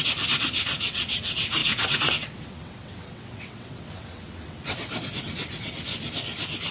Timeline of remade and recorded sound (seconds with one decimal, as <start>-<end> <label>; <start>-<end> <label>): 0.0-5.9 remade; 5.9-6.7 recorded